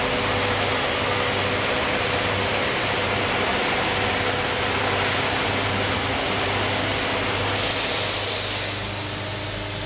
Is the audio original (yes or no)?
yes